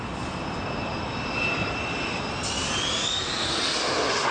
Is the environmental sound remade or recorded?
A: recorded